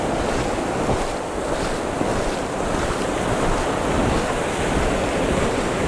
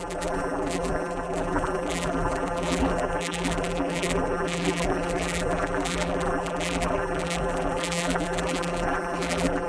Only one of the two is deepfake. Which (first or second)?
second